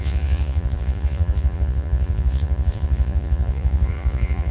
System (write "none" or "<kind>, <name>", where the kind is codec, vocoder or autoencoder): vocoder, Vocos